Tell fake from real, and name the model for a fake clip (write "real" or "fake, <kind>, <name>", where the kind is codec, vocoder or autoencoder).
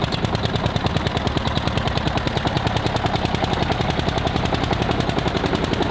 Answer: real